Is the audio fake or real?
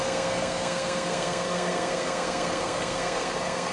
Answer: fake